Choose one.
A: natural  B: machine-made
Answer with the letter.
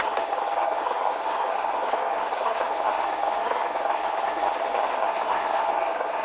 B